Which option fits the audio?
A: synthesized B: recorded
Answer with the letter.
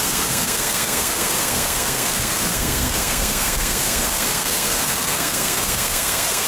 A